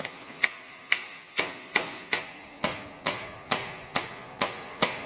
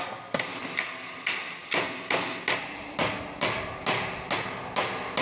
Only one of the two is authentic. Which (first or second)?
second